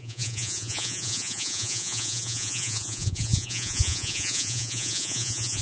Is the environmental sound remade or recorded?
remade